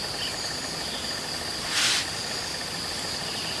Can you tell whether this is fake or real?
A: real